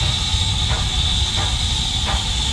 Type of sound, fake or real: real